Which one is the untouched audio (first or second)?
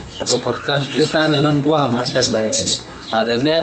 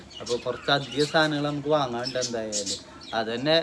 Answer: second